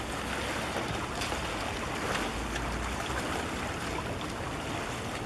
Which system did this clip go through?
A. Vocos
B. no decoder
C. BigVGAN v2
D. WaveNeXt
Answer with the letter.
B